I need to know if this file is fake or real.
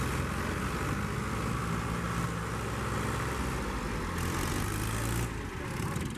real